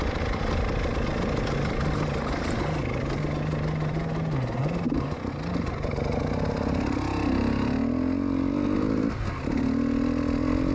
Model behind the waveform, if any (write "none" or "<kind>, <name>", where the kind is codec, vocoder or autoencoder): none